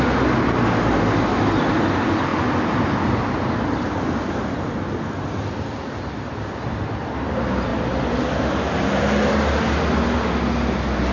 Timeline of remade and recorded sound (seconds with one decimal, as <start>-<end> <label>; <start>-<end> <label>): 0.0-11.1 recorded

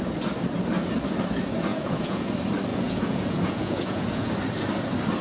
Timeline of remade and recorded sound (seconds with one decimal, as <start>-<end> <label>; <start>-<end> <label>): 0.0-1.7 recorded; 1.7-2.3 remade; 2.3-2.7 recorded; 2.7-4.3 remade; 4.3-5.2 recorded

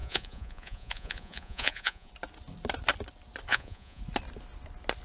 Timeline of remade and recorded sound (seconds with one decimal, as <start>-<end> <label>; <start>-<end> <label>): 0.0-2.1 remade; 2.1-3.5 recorded; 3.5-4.0 remade; 4.0-5.0 recorded